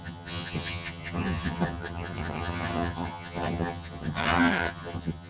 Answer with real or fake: fake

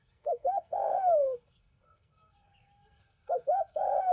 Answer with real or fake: fake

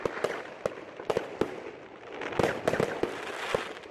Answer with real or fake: real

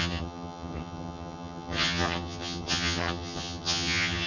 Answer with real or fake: fake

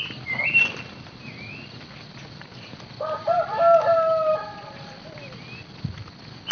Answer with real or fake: real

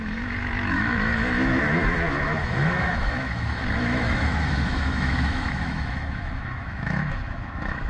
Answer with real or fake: fake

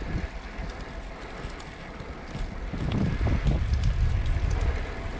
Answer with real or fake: real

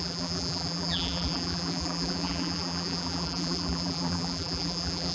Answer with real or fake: fake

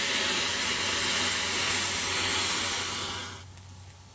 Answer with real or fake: real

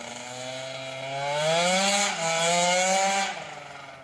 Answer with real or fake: real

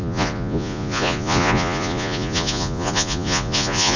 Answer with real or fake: fake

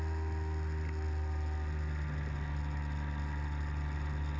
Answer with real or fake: real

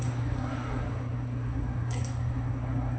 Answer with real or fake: fake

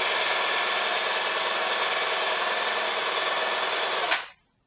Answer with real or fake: real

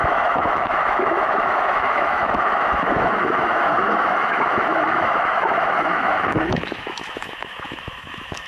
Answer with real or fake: fake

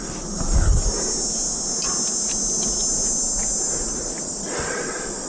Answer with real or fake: real